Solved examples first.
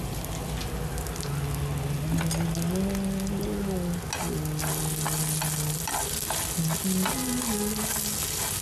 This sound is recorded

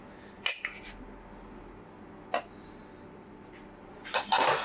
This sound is recorded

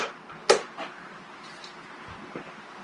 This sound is recorded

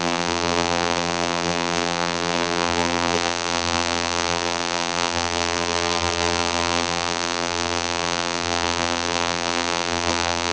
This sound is remade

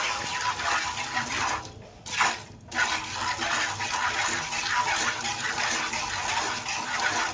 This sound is recorded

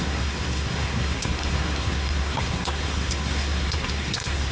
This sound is remade